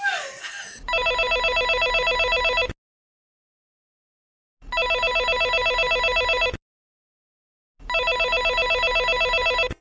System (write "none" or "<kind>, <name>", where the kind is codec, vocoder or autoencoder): none